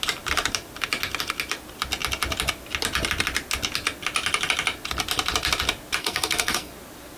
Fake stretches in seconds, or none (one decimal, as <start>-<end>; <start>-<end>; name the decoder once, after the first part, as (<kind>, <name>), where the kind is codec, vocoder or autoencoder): 6.0-6.7 (codec, SNAC)